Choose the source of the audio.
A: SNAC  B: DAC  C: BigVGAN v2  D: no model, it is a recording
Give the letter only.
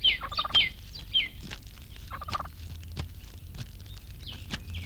D